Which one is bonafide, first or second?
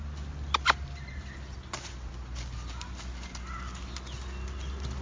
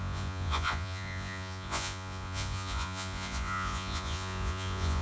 first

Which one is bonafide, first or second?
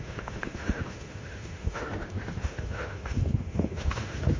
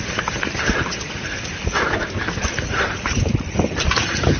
second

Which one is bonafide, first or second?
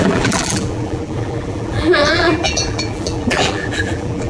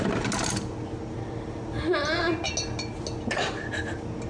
second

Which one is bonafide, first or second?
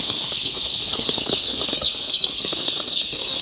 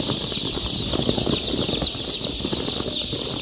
second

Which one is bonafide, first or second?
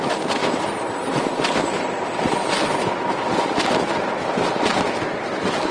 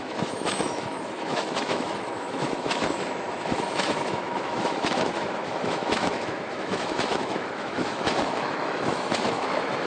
first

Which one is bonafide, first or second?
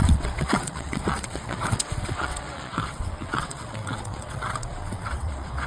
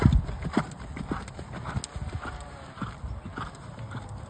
second